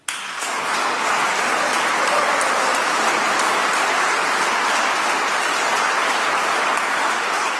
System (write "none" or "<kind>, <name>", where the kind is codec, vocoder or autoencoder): none